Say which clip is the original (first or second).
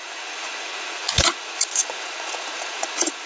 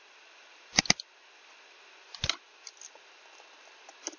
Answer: second